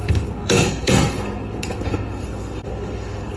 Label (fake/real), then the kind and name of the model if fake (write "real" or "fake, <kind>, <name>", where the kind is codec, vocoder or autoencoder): fake, codec, SNAC